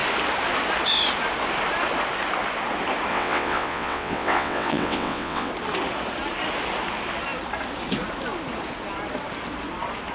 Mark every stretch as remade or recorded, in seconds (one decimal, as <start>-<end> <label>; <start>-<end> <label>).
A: 0.0-3.1 recorded; 3.1-5.5 remade; 5.5-10.1 recorded